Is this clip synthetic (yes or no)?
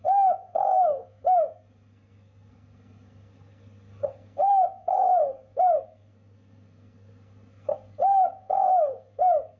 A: yes